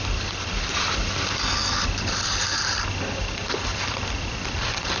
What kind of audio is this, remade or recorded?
recorded